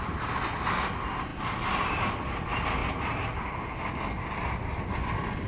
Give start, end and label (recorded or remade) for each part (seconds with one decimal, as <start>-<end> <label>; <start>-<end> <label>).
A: 0.0-5.5 recorded